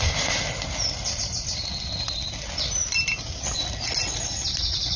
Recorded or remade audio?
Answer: recorded